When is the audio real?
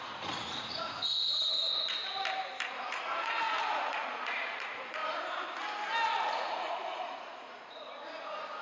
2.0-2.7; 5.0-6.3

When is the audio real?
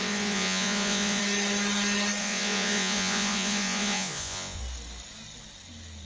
1.2-2.2; 4.6-6.0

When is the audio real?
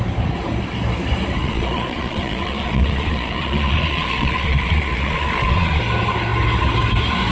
0.0-1.4; 5.8-7.3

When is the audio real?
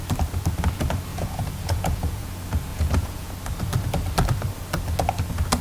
0.0-1.1; 2.3-2.7; 3.3-5.6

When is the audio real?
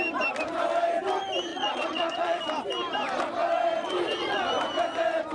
0.0-1.5; 2.4-3.8; 4.4-5.3